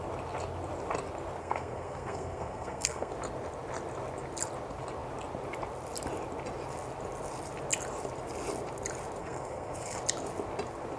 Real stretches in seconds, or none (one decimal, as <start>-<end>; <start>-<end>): 0.0-1.4; 3.1-9.2; 10.0-11.0